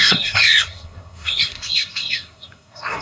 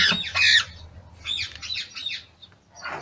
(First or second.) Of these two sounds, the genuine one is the second